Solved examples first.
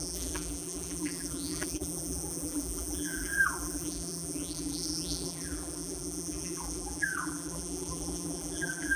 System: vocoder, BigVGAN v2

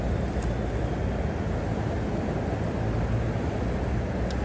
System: none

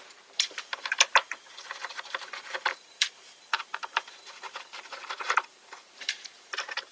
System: vocoder, BigVGAN v2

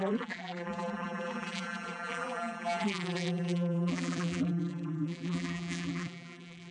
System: vocoder, BigVGAN v2